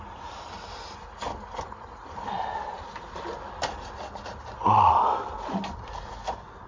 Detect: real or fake real